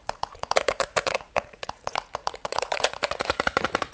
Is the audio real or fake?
fake